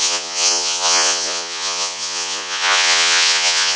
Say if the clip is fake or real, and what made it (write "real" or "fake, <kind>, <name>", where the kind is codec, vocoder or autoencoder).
fake, vocoder, Vocos